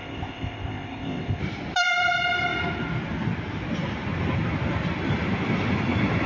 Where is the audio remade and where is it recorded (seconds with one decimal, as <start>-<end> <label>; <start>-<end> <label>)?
0.0-1.4 remade; 1.4-6.3 recorded